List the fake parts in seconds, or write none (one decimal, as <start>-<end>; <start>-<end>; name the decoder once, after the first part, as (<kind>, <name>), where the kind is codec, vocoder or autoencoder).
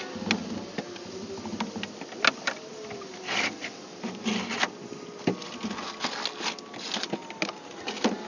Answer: none